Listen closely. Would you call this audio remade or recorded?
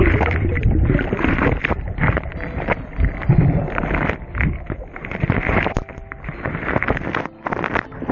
recorded